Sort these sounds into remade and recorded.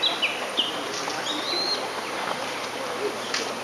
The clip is recorded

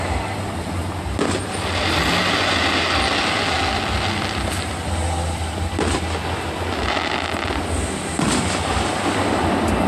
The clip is recorded